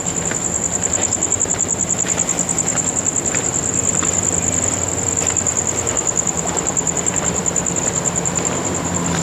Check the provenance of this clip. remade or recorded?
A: remade